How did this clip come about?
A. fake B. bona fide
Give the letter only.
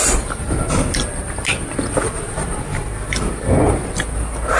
B